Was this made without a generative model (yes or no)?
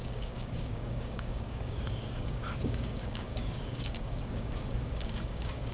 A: no